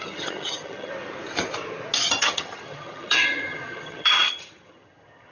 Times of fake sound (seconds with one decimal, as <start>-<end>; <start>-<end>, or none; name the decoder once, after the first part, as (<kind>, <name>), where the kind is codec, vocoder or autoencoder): 0.0-0.9 (vocoder, HiFi-GAN); 2.2-5.3